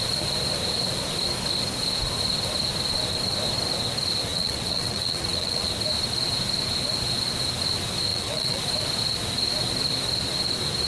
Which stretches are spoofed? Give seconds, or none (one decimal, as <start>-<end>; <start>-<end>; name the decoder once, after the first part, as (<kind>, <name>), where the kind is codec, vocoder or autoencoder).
4.3-5.7 (vocoder, WaveNeXt); 8.1-8.6